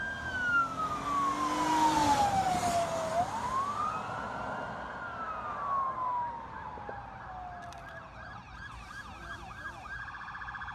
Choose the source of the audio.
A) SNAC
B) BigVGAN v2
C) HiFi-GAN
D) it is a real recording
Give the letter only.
D